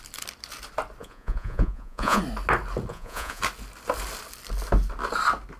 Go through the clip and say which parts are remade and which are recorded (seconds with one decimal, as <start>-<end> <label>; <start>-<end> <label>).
0.0-1.0 recorded; 1.0-2.2 remade; 2.2-2.9 recorded; 2.9-3.4 remade; 3.4-5.6 recorded